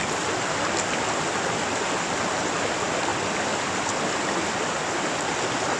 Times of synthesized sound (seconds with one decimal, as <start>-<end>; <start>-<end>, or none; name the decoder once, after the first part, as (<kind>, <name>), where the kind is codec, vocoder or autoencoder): none